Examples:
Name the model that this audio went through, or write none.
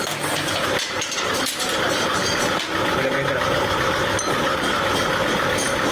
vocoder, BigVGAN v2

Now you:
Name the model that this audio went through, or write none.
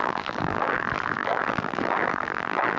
vocoder, BigVGAN v2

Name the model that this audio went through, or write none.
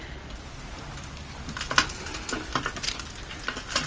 none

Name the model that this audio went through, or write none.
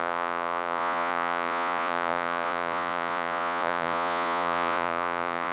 vocoder, Vocos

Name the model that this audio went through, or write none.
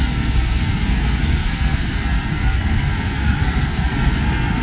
codec, SNAC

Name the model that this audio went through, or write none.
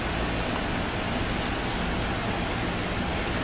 none